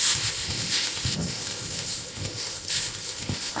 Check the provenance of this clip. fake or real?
fake